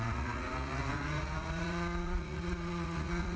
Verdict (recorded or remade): remade